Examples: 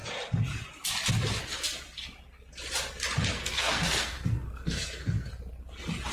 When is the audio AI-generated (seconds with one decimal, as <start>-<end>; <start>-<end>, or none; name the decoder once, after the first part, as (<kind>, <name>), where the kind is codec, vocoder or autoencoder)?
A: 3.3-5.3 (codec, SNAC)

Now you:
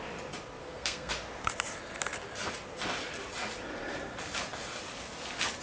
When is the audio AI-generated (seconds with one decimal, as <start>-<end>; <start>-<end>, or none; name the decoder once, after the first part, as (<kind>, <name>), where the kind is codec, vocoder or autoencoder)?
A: 0.6-1.1 (codec, SNAC)

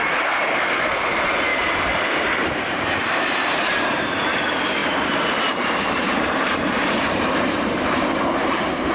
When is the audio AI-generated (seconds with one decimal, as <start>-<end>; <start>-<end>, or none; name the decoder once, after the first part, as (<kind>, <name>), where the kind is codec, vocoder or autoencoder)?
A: 0.0-8.9 (vocoder, BigVGAN v2)